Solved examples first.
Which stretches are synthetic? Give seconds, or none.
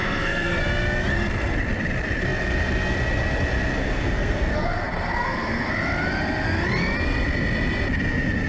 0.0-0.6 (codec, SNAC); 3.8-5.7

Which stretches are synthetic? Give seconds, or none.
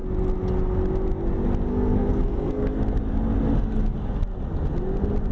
1.7-2.8 (codec, SNAC)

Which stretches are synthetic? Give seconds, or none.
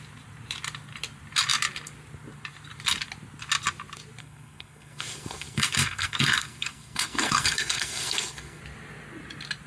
4.2-8.6 (codec, SNAC)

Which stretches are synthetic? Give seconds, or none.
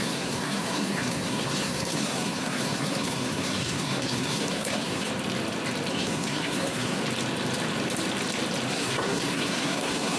0.0-5.1 (codec, SNAC); 5.9-7.0; 8.7-10.2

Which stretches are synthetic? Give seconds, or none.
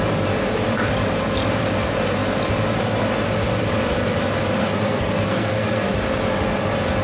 4.6-5.9 (codec, SNAC)